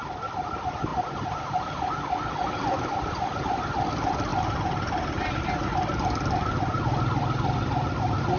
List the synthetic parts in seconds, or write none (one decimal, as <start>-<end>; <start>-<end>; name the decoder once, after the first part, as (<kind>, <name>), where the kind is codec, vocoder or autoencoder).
none